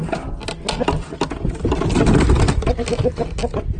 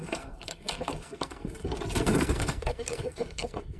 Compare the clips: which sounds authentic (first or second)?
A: first